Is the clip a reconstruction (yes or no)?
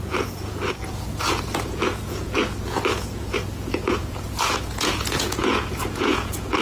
yes